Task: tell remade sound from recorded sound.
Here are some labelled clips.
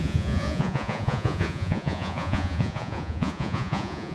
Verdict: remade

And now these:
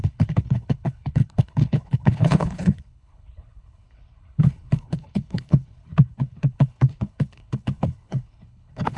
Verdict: remade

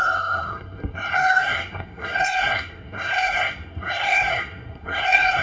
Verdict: remade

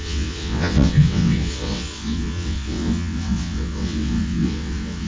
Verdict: remade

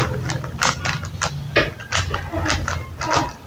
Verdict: recorded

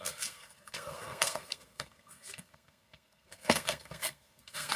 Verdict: remade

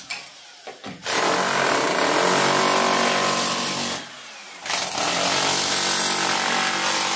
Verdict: recorded